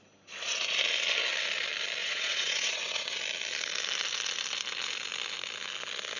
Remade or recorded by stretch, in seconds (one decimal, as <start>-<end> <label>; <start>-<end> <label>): 0.0-2.0 recorded; 2.0-3.2 remade; 3.2-6.2 recorded